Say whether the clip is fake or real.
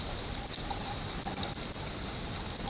real